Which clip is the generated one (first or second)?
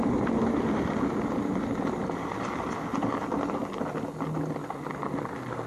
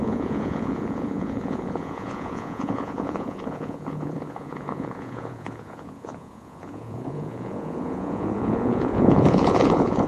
second